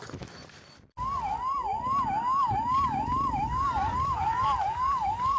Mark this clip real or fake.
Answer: real